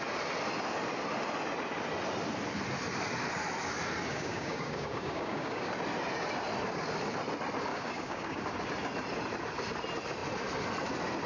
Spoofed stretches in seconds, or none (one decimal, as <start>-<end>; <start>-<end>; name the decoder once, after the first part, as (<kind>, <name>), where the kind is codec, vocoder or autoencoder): 4.1-5.7 (codec, DAC); 7.7-8.4